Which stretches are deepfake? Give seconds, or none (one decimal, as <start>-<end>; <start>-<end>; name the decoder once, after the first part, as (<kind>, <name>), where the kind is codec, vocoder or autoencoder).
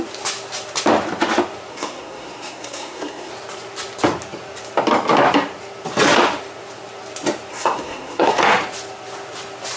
1.7-3.3 (codec, SNAC); 7.5-8.4